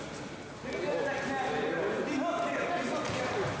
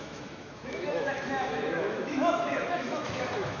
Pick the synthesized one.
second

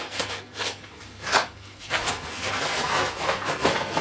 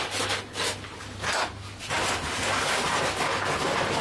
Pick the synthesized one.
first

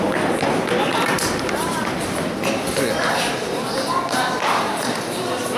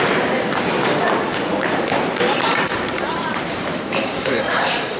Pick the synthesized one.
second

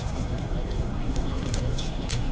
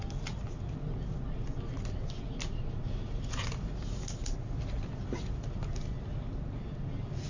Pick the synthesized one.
first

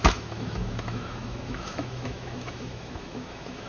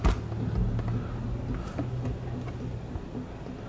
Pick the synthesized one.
first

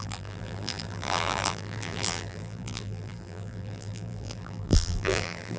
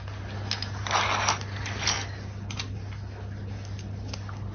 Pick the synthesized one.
first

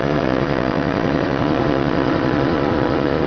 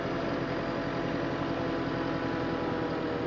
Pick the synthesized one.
first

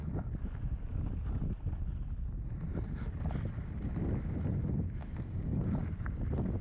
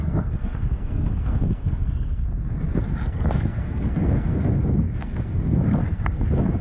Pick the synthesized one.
second